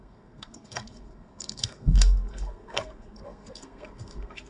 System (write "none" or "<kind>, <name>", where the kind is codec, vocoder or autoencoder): codec, SNAC